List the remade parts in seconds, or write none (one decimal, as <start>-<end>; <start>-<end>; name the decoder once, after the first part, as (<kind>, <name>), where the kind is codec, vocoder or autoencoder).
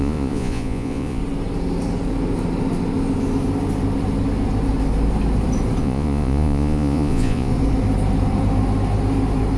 0.0-1.2 (vocoder, Vocos); 5.8-7.5